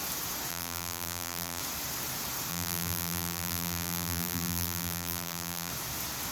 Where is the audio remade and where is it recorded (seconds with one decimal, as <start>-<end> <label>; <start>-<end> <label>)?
0.0-0.5 recorded; 0.5-1.6 remade; 1.6-2.5 recorded; 2.5-5.7 remade; 5.7-6.3 recorded